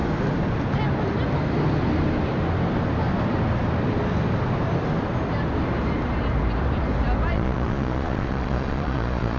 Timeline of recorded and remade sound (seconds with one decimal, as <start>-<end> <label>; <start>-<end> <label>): 0.0-7.3 recorded; 7.3-9.4 remade